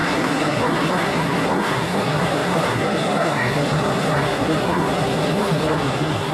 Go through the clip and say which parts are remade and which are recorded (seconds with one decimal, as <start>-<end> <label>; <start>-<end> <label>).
0.0-6.3 remade